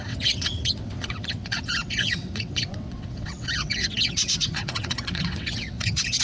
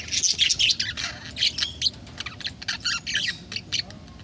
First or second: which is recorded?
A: second